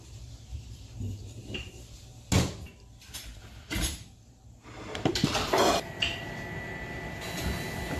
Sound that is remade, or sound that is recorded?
recorded